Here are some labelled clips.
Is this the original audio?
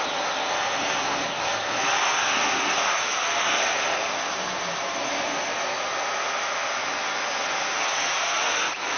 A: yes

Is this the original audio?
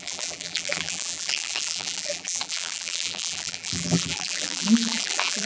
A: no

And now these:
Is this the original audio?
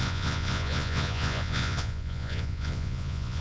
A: no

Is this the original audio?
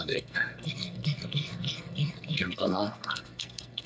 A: no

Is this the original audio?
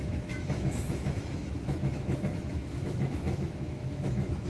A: no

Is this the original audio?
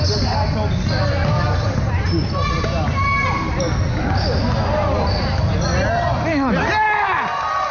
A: yes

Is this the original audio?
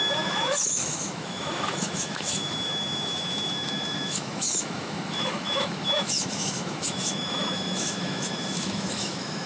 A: no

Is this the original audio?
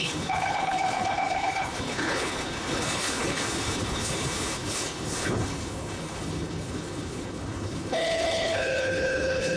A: no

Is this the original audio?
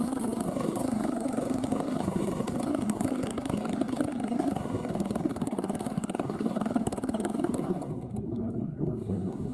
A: no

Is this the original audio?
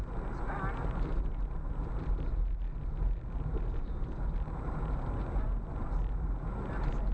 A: yes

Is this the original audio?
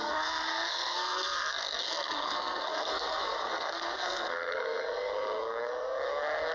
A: no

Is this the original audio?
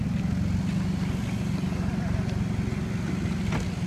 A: yes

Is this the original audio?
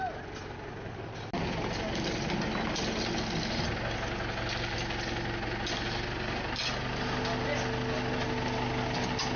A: yes